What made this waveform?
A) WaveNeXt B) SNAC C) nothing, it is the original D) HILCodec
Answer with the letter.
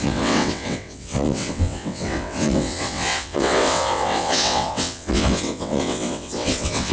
A